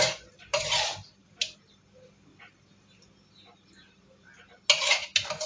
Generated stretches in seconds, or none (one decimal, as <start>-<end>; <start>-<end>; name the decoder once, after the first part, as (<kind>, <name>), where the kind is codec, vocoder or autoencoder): none